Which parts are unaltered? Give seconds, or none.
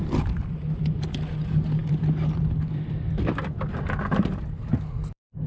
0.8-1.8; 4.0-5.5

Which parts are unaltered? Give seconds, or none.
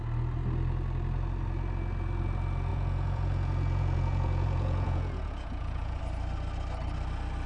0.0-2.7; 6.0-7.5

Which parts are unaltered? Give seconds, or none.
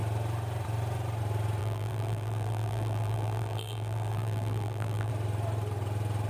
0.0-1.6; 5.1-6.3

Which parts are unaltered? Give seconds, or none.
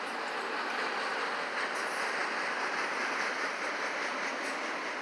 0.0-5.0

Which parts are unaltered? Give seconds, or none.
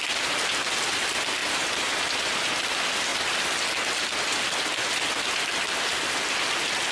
0.0-1.4; 1.9-6.9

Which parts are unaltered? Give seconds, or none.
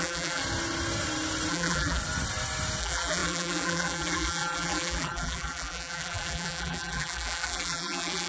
0.4-1.5; 2.0-2.8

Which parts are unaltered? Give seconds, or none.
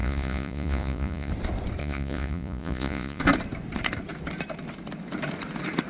1.3-1.8; 3.2-5.9